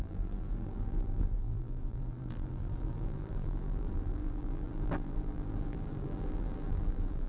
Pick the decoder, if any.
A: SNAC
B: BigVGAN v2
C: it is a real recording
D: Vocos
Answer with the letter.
B